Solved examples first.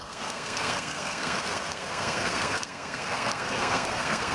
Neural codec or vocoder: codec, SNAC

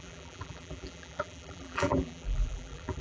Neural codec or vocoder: vocoder, BigVGAN v2